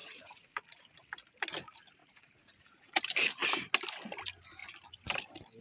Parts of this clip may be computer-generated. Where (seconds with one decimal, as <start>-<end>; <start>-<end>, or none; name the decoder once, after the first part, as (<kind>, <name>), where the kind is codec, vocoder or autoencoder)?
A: 0.0-0.8 (vocoder, Vocos); 2.0-3.0

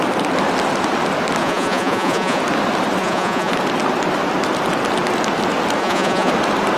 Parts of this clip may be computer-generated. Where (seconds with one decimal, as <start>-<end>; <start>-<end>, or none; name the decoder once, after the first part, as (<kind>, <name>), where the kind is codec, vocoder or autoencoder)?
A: 1.4-2.4 (vocoder, Vocos); 3.0-3.5; 5.8-6.3

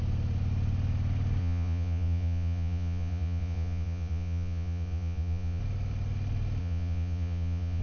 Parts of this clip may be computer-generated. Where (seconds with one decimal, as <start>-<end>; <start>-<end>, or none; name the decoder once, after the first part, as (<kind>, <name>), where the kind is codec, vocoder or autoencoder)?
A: 1.4-5.6 (vocoder, Vocos); 6.6-7.8

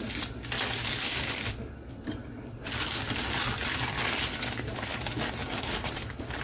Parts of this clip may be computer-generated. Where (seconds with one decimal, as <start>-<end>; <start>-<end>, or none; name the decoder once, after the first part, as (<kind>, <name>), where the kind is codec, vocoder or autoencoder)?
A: none